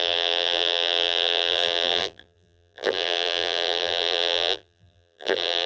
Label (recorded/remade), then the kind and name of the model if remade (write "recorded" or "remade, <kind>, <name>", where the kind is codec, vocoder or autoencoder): remade, vocoder, BigVGAN v2